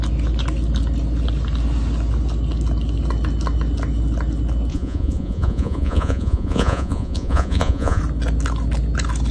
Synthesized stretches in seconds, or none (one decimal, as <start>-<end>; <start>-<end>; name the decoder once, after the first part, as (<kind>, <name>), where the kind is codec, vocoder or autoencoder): 4.7-8.0 (vocoder, Vocos)